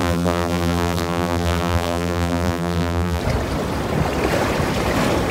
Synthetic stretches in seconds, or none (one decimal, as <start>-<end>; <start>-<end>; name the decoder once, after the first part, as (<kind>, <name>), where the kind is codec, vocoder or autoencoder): 0.0-3.2 (vocoder, BigVGAN v2)